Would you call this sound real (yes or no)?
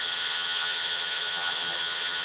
no